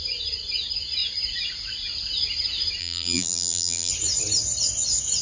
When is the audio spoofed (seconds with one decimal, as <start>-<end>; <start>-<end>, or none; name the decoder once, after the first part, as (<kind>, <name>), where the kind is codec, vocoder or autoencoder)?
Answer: 2.8-3.9 (vocoder, BigVGAN v2)